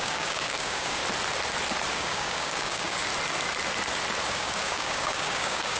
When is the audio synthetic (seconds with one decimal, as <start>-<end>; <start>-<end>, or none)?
0.0-1.0; 1.9-3.1; 4.3-5.8

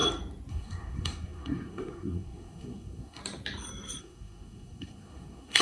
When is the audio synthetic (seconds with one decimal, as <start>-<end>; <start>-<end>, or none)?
0.5-3.2; 4.0-5.6

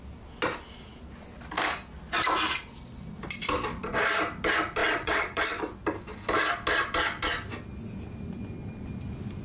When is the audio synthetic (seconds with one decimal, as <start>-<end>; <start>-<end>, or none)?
4.8-5.6

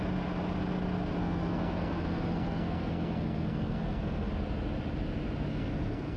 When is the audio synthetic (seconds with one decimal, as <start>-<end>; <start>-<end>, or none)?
1.2-4.3; 5.5-6.2

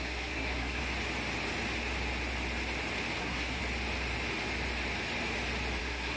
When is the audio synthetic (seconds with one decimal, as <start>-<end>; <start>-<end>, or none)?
0.0-0.8; 3.2-3.6; 5.8-6.2

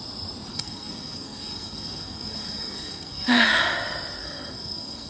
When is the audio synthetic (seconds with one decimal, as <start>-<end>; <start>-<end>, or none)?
0.5-3.6; 4.2-5.1